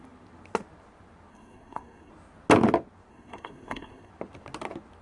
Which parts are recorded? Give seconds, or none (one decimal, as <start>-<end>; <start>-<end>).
0.0-1.3; 2.1-3.1; 4.1-5.0